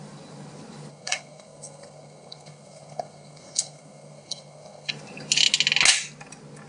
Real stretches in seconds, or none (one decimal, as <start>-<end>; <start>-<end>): 0.0-0.9; 4.9-6.7